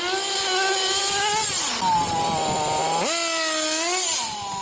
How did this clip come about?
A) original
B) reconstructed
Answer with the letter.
A